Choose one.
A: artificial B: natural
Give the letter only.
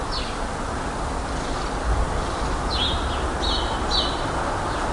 B